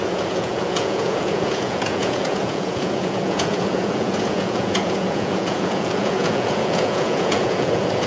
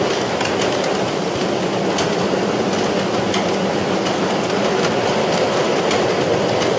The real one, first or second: second